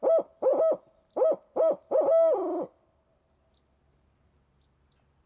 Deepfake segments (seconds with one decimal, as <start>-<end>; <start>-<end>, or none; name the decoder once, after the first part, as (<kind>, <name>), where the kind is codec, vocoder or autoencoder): none

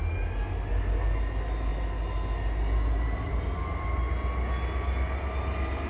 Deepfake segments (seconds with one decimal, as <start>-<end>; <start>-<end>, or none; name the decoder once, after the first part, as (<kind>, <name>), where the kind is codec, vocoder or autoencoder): none

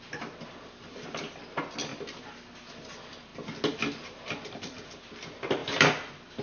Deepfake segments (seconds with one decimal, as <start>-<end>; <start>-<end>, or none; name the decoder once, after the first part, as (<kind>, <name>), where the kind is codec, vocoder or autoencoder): none

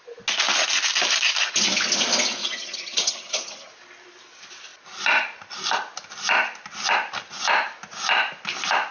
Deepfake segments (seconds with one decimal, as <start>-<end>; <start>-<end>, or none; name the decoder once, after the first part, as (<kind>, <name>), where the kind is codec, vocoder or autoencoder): 2.4-3.7 (vocoder, HiFi-GAN)

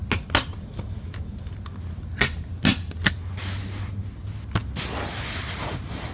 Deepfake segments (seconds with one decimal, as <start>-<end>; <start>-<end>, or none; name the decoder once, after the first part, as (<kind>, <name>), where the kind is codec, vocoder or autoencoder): none

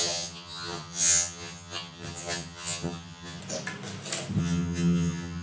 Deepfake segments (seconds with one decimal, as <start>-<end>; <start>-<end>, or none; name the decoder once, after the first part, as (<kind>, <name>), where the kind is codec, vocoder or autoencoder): 0.0-3.4 (vocoder, HiFi-GAN); 4.4-5.4

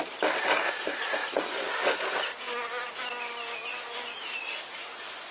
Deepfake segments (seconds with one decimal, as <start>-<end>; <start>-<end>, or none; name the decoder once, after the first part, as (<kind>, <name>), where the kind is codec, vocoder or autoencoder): none

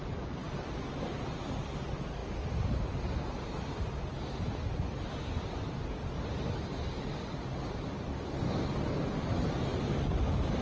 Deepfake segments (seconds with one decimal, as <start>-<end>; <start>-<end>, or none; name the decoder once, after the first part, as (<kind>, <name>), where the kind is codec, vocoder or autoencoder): none